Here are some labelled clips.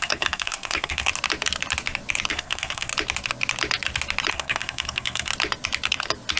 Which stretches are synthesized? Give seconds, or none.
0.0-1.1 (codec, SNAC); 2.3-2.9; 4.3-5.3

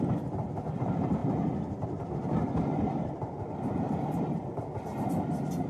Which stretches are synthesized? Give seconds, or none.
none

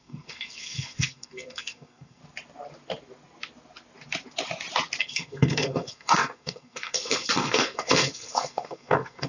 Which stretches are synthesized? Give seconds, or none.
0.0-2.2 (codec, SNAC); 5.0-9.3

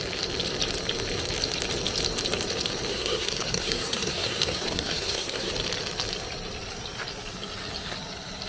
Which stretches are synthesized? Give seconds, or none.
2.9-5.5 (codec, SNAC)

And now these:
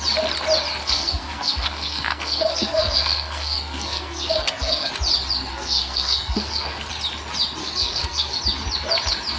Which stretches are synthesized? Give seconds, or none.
0.8-4.9 (codec, SNAC); 5.5-6.9; 7.6-8.4

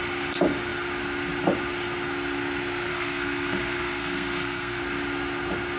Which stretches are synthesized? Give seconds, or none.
2.9-4.8 (codec, SNAC)

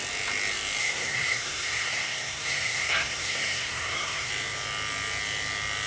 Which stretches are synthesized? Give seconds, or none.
0.8-4.3 (codec, SNAC)

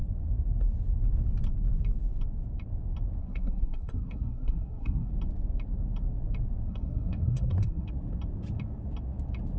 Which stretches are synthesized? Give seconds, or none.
3.2-5.1 (codec, SNAC); 6.7-7.9